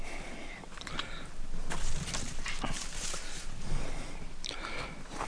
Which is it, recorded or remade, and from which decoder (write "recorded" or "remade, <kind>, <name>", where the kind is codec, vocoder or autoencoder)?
recorded